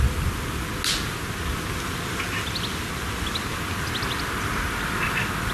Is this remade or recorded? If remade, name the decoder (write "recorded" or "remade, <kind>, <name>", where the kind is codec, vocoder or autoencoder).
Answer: recorded